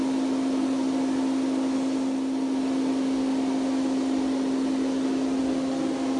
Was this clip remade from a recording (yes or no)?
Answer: no